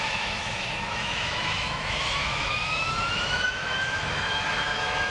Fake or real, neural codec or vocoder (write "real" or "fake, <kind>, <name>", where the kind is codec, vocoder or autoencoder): fake, autoencoder, DAC-VAE